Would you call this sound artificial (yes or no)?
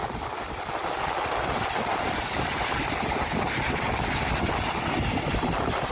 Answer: no